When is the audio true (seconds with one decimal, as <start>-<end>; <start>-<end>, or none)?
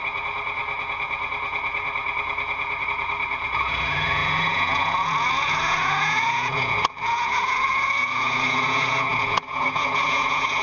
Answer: none